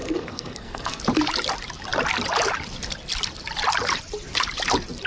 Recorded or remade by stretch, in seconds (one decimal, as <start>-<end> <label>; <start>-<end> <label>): 0.0-1.0 remade; 1.0-5.1 recorded